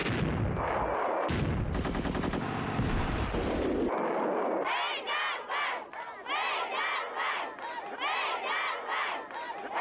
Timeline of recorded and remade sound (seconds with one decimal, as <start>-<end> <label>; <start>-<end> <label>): 0.0-9.8 recorded